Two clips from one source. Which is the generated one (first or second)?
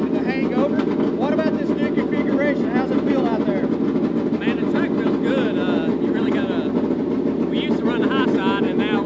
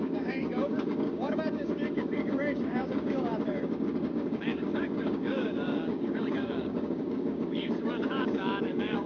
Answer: second